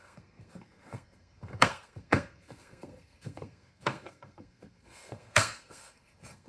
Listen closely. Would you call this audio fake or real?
fake